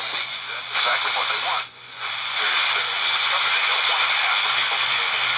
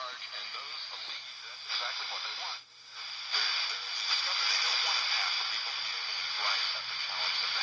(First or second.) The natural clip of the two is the second